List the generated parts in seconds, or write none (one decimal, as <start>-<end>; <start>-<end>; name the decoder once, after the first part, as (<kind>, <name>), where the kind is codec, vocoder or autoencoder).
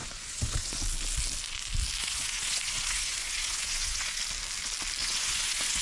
0.0-0.8 (vocoder, Vocos); 2.0-4.2; 5.0-5.8